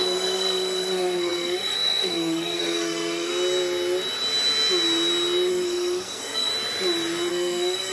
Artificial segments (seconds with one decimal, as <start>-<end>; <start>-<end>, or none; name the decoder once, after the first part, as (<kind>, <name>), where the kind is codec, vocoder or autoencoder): 0.0-3.3 (codec, SNAC); 5.5-6.5; 7.3-7.9